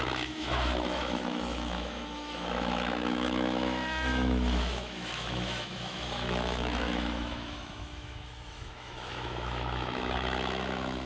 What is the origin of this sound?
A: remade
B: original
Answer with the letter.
A